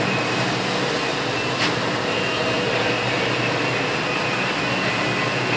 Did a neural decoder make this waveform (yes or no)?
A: no